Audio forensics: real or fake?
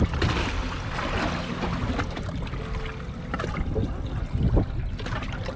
real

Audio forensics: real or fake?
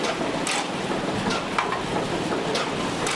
real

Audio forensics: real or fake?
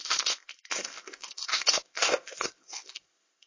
fake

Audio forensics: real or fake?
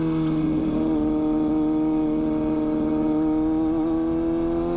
real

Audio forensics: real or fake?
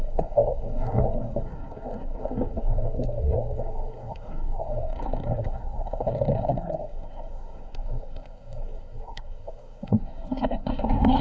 fake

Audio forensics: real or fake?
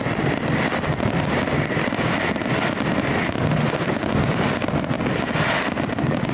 real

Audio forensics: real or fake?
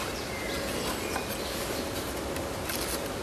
real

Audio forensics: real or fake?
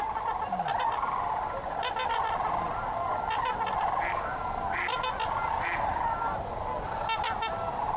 real